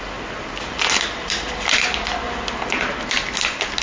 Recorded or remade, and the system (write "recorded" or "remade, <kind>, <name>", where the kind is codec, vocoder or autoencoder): recorded